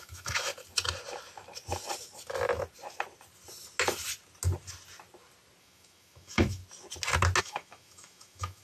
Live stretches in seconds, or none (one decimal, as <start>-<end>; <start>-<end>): 0.5-5.6; 6.6-7.4